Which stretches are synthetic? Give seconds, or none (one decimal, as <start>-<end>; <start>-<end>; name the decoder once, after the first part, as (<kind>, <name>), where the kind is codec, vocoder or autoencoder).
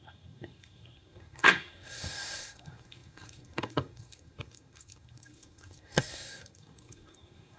0.0-7.6 (codec, SNAC)